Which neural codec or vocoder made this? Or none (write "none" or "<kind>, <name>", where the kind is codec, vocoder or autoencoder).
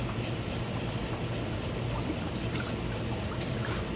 none